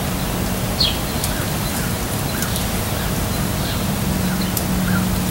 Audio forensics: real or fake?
real